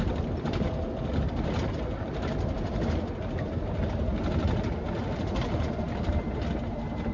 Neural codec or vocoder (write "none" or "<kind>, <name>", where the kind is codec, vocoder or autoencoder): none